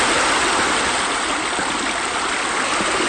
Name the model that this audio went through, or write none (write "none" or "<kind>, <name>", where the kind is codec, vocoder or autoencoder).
none